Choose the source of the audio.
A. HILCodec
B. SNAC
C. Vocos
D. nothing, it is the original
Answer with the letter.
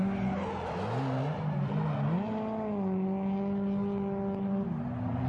D